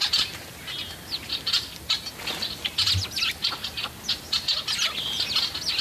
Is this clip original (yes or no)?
yes